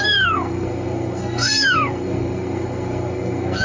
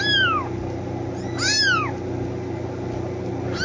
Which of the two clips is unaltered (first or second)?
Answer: second